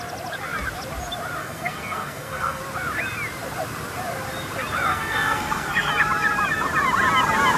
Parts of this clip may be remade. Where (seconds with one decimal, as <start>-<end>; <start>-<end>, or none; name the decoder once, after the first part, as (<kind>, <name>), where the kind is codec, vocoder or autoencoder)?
1.4-2.6 (codec, SNAC); 4.9-5.9